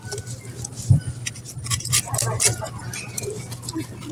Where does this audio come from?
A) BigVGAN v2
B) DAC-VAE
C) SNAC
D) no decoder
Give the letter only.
D